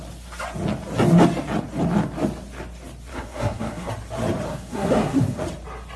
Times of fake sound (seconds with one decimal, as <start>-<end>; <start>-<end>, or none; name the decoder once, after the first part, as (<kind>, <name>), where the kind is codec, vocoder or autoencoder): 3.1-3.9 (codec, SNAC); 4.5-5.4